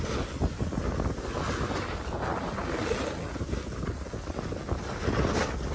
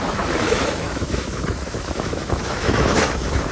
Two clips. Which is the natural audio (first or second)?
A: first